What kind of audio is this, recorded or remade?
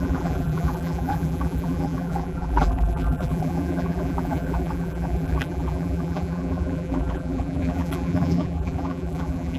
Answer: remade